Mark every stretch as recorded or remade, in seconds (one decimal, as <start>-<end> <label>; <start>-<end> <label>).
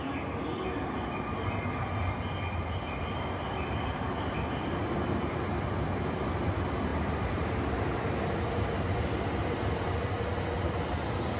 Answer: 0.0-11.4 recorded